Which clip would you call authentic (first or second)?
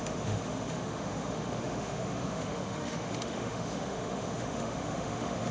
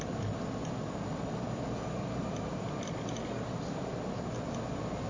second